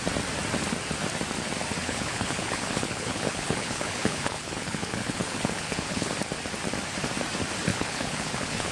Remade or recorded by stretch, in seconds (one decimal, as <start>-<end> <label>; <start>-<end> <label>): 0.0-1.8 recorded; 1.8-6.1 remade; 6.1-7.7 recorded; 7.7-8.7 remade